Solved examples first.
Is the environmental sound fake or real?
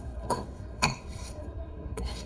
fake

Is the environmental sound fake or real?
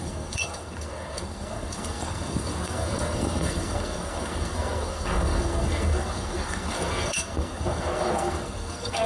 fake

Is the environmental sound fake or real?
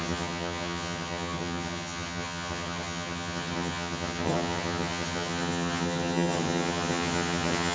fake